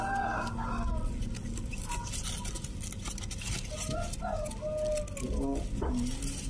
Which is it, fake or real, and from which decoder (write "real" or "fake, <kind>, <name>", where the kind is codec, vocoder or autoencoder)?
real